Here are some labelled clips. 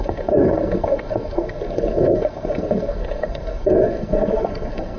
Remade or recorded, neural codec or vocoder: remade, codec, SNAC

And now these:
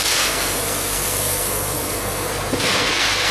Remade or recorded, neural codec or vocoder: remade, codec, SNAC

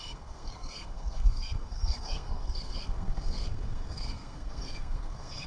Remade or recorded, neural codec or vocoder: remade, codec, SNAC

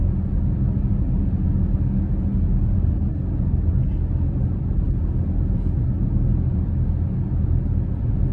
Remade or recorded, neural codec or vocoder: recorded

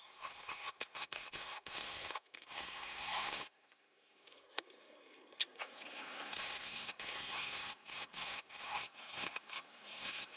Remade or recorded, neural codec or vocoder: remade, codec, SNAC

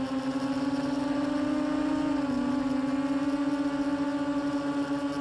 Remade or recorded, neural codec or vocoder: recorded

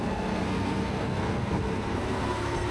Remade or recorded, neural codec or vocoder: remade, codec, SNAC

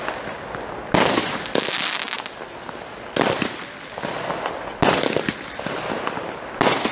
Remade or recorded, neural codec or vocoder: recorded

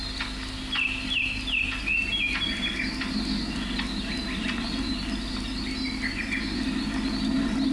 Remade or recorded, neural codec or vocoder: recorded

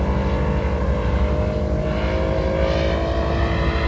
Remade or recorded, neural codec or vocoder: recorded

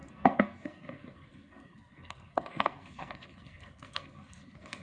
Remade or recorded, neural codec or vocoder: remade, codec, SNAC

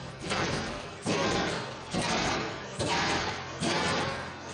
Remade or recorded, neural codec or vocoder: remade, codec, SNAC